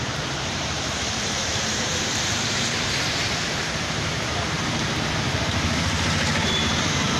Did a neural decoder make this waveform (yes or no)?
yes